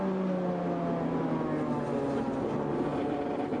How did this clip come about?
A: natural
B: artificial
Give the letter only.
A